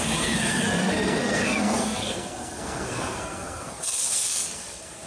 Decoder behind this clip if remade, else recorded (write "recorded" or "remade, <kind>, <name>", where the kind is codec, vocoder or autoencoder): remade, codec, SNAC